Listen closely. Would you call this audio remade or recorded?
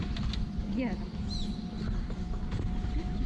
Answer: recorded